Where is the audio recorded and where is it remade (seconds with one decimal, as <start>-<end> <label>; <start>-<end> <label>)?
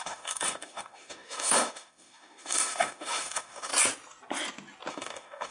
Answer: 0.0-3.7 remade; 3.7-4.9 recorded; 4.9-5.5 remade